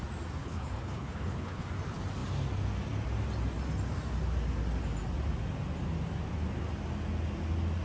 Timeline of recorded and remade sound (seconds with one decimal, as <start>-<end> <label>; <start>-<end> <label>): 0.0-0.4 recorded; 0.4-1.7 remade; 1.7-7.8 recorded